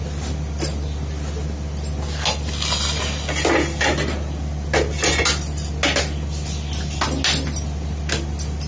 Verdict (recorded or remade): recorded